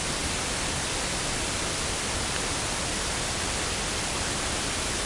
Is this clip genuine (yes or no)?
yes